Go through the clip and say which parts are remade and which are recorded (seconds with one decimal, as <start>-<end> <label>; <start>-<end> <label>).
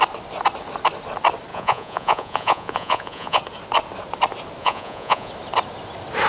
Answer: 0.0-1.5 recorded; 1.5-3.4 remade; 3.4-4.6 recorded; 4.6-5.3 remade; 5.3-6.3 recorded